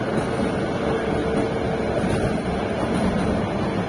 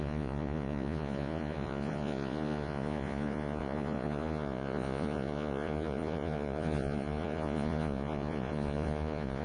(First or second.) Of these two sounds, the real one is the first